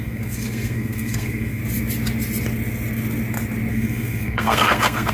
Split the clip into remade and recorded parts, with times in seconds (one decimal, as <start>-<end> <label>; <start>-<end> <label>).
0.0-1.6 remade; 1.6-3.7 recorded; 3.7-5.1 remade